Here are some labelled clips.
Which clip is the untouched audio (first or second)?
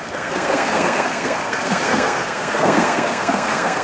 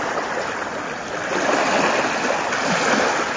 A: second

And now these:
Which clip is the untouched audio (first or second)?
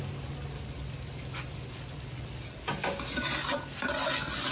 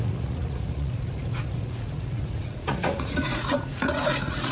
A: first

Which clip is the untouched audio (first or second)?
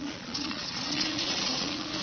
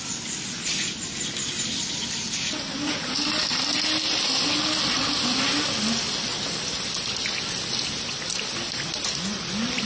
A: second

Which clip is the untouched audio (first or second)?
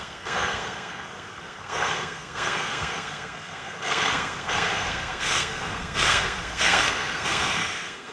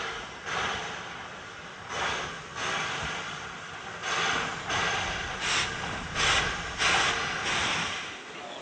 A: second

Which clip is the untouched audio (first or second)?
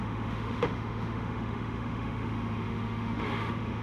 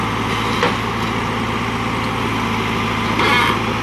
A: second